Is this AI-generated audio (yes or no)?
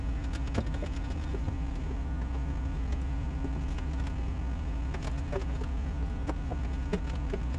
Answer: no